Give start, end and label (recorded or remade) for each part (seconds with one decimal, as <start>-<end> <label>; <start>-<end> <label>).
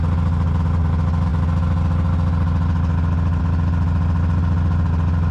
0.0-5.3 recorded